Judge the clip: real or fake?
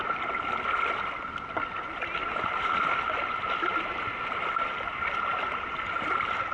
real